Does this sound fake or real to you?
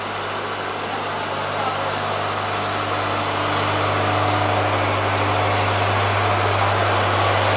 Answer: real